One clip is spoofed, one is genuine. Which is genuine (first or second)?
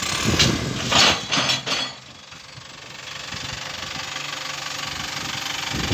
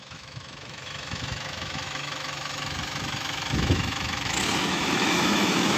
first